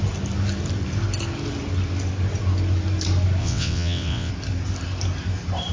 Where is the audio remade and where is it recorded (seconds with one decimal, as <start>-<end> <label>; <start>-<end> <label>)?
0.0-3.4 recorded; 3.4-4.3 remade; 4.3-5.7 recorded